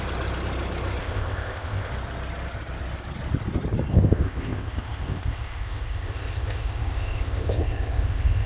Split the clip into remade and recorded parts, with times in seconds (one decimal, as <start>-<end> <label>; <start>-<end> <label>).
0.0-1.0 recorded; 1.0-1.9 remade; 1.9-3.9 recorded; 3.9-8.5 remade